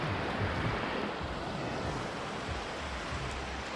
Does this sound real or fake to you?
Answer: real